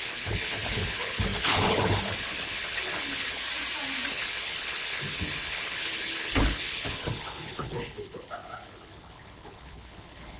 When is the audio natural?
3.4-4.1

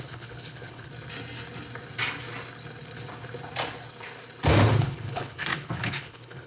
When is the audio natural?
0.9-4.8